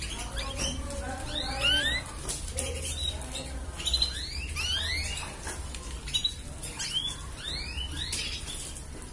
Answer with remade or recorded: recorded